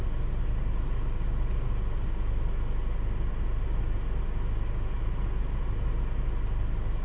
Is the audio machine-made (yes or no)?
no